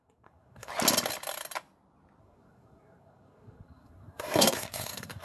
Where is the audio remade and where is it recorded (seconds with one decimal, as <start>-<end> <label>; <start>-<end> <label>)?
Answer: 0.0-0.7 remade; 0.7-2.2 recorded; 2.2-5.2 remade

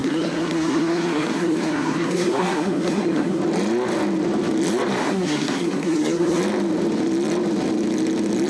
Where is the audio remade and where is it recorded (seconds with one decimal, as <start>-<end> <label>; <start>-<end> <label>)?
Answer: 0.0-3.4 remade; 3.4-5.0 recorded; 5.0-6.4 remade; 6.4-8.5 recorded

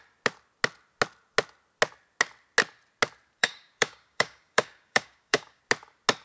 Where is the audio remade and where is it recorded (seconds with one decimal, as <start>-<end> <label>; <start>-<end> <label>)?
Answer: 0.0-3.4 recorded; 3.4-5.6 remade; 5.6-6.2 recorded